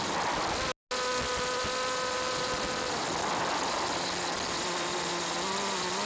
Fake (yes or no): no